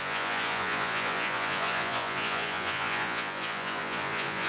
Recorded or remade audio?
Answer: remade